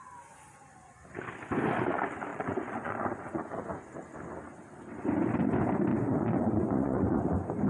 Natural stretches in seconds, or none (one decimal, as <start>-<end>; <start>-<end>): 0.0-2.3; 3.6-5.9; 7.2-7.7

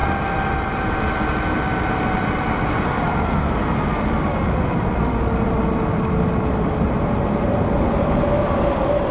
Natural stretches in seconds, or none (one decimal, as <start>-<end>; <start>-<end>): 0.0-9.1

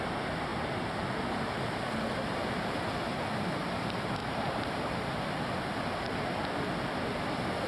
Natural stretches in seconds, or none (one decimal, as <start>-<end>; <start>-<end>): 0.0-0.5; 1.4-4.2; 5.4-7.7

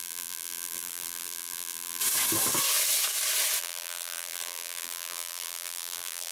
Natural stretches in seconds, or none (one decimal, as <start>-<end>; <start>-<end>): 2.0-3.6